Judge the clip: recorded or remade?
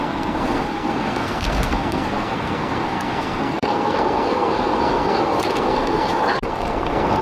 remade